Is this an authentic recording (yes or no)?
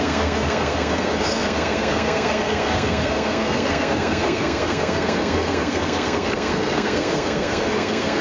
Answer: no